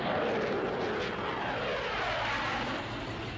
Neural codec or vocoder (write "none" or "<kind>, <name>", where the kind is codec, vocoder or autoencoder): none